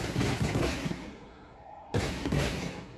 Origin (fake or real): fake